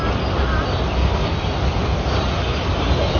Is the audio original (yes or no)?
yes